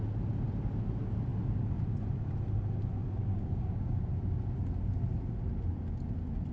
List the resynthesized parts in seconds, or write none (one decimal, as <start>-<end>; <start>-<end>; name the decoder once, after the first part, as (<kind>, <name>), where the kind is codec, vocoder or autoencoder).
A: 3.2-4.1 (codec, DAC)